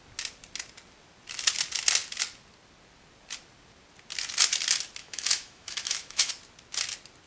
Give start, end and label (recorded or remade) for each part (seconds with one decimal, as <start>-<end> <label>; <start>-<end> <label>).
0.0-5.0 recorded; 5.0-6.3 remade; 6.3-7.3 recorded